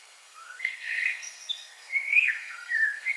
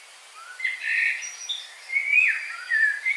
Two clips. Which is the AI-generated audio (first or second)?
first